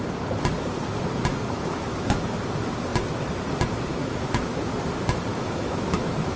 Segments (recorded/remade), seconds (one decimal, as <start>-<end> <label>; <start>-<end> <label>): 0.0-1.3 recorded; 1.3-2.2 remade; 2.2-4.0 recorded; 4.0-4.7 remade; 4.7-5.3 recorded; 5.3-6.4 remade

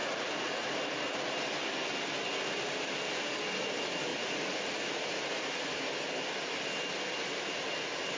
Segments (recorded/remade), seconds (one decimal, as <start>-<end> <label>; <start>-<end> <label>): 0.0-0.7 remade; 0.7-4.1 recorded; 4.1-5.5 remade; 5.5-8.2 recorded

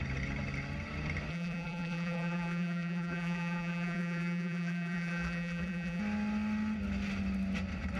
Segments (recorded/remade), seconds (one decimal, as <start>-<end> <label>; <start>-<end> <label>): 0.0-1.3 recorded; 1.3-6.0 remade; 6.0-8.0 recorded

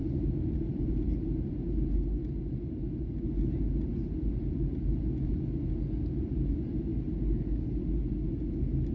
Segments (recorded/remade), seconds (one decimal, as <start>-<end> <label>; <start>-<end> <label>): 0.0-1.5 remade; 1.5-8.9 recorded

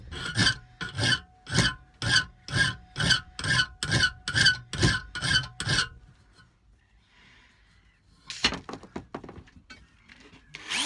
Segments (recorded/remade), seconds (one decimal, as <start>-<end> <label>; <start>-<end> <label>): 0.0-10.9 recorded

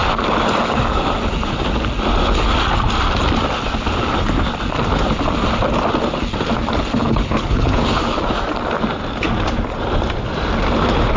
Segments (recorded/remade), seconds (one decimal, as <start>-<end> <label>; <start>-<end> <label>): 0.0-7.0 recorded; 7.0-7.8 remade; 7.8-11.2 recorded

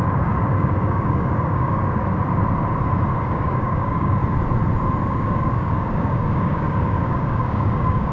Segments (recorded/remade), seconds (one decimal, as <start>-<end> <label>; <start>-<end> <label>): 0.0-1.8 remade; 1.8-3.3 recorded; 3.3-4.2 remade; 4.2-5.1 recorded; 5.1-8.1 remade